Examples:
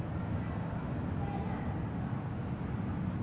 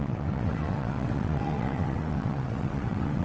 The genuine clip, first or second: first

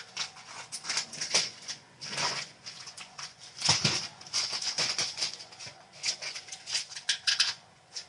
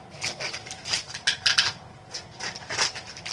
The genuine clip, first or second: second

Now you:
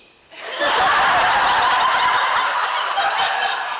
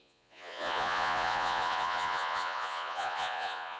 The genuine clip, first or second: first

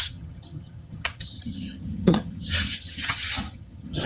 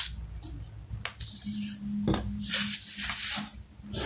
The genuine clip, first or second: second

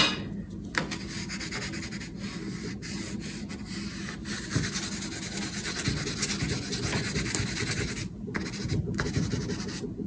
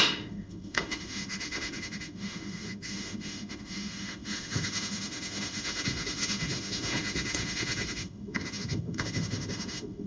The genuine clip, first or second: first